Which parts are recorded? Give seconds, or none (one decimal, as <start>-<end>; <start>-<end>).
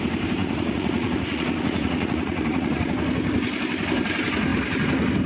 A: 0.0-0.4; 2.9-5.3